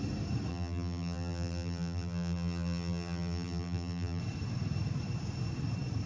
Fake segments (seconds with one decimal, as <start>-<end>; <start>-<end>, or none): 0.5-4.2